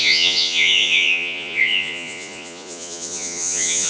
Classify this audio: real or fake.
fake